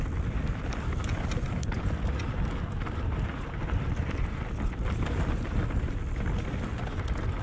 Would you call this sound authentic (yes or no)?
yes